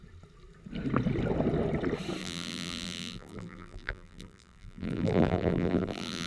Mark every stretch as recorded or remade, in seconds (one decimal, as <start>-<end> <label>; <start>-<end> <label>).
0.0-2.2 recorded; 2.2-6.3 remade